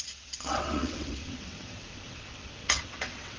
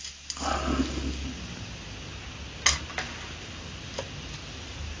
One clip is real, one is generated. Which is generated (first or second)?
first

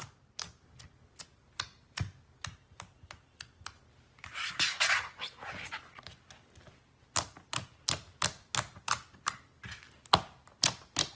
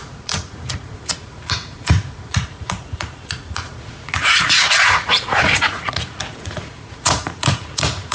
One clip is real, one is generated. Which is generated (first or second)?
second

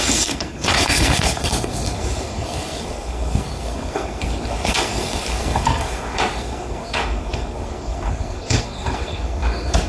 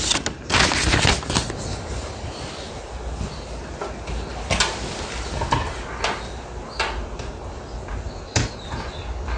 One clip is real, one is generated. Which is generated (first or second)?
first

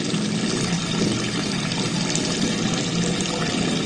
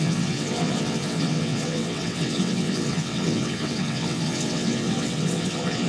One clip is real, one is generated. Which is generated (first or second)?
second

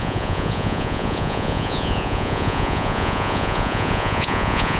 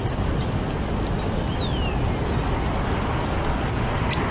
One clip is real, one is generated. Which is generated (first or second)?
first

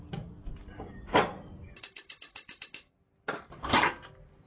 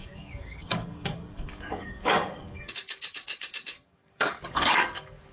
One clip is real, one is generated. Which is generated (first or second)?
second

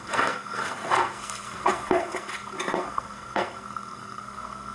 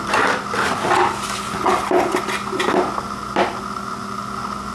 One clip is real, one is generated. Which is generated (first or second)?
first